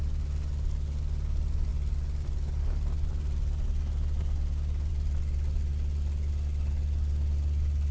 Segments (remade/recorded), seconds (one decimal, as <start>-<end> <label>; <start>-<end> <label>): 0.0-7.9 recorded